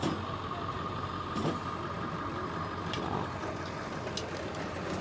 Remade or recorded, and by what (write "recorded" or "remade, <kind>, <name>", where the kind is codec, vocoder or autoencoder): recorded